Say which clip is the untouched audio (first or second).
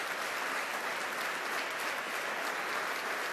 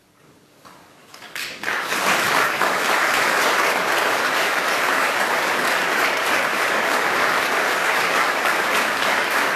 first